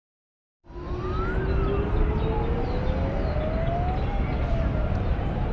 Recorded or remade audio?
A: recorded